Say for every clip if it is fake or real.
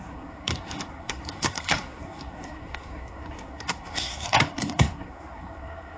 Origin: fake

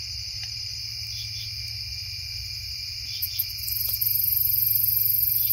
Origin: real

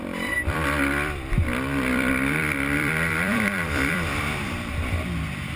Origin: fake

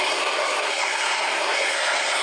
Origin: fake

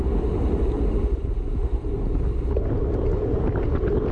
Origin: real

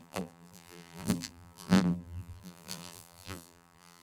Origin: fake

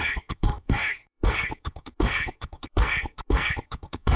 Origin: fake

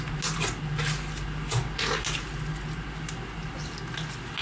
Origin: real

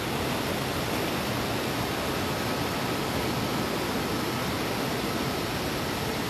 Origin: real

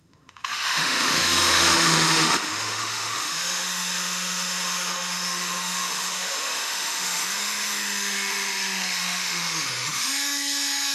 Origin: fake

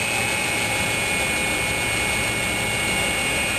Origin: real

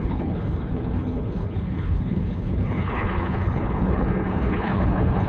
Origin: fake